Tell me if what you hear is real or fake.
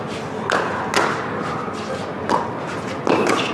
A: real